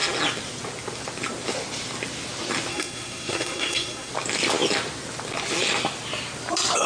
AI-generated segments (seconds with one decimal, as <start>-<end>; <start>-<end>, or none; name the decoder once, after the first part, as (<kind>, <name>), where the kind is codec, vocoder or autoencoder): 2.7-4.1 (codec, SNAC)